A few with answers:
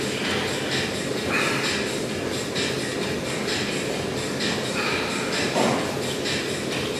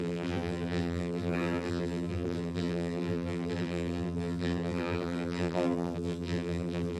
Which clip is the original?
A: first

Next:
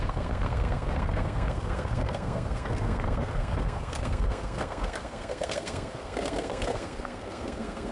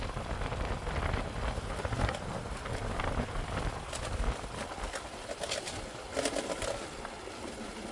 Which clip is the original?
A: second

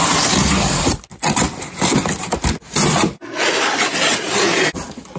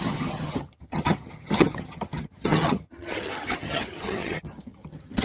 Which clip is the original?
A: first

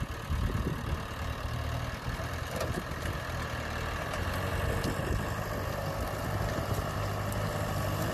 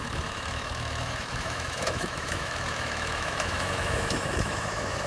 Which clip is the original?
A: first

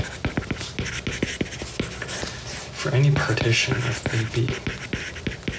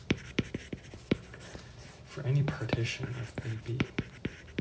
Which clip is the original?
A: first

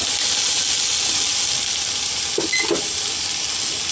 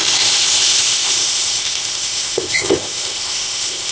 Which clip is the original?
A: first